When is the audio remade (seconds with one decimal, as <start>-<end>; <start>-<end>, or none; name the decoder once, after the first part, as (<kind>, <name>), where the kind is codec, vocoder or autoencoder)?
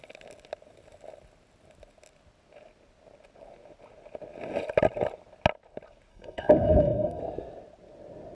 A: 6.1-7.2 (codec, SNAC)